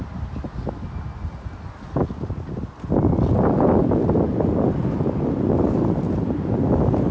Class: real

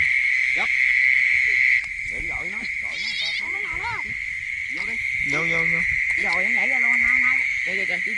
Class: real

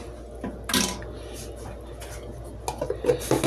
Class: real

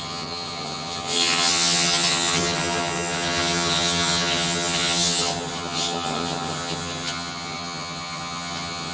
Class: fake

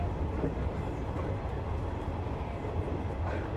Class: real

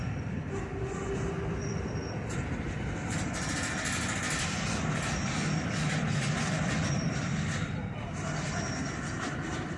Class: real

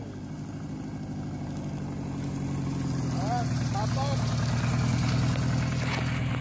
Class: real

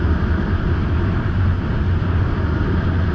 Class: real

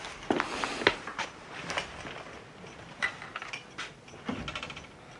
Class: real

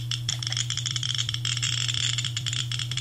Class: fake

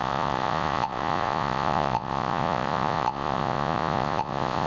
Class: fake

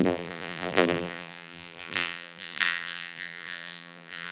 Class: fake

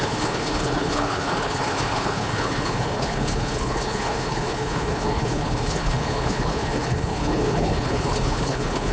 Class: fake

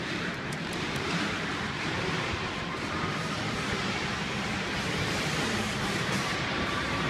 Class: fake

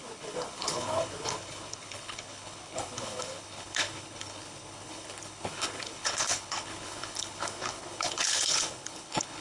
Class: fake